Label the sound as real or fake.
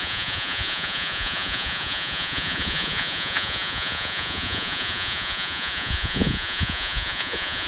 fake